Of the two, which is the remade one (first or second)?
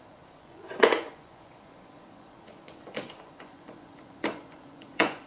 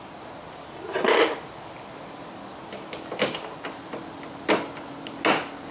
first